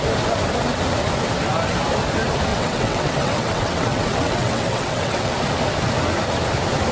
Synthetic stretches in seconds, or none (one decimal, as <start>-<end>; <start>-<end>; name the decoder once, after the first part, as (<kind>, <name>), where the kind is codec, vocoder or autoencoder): 2.5-5.3 (vocoder, WaveNeXt)